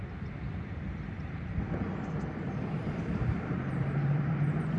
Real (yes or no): no